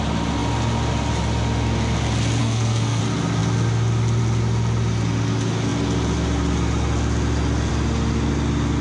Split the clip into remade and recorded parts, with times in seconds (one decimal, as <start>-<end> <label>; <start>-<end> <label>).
0.0-2.4 recorded; 2.4-3.0 remade; 3.0-8.8 recorded

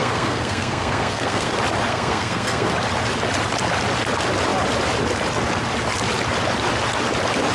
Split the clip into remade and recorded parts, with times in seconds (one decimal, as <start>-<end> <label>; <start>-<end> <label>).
0.0-1.5 remade; 1.5-1.9 recorded; 1.9-2.7 remade; 2.7-7.5 recorded